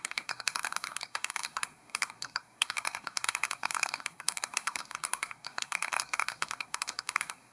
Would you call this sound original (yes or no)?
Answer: no